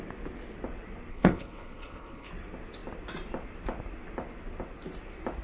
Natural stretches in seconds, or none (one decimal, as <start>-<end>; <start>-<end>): 0.0-1.1; 2.3-5.4